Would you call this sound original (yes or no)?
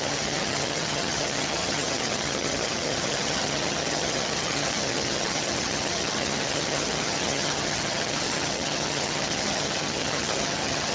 no